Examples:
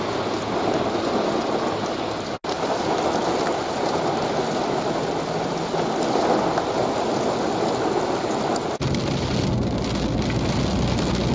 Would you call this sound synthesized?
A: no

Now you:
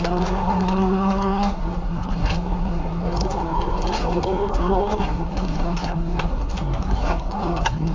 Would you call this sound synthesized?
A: yes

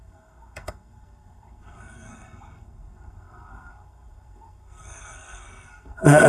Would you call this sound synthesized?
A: yes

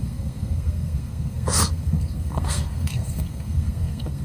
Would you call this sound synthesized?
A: yes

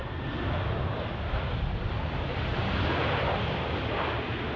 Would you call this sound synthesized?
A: no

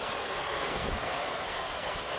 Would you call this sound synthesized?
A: yes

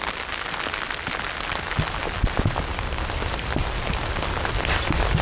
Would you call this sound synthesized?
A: no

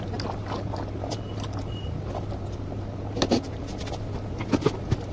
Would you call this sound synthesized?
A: no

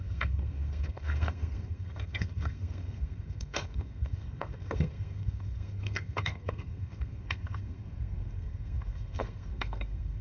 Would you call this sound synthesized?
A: yes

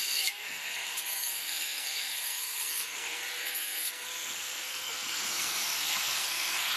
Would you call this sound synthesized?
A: yes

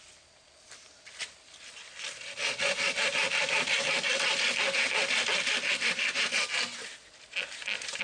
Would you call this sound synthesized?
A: no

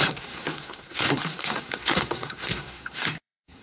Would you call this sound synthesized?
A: yes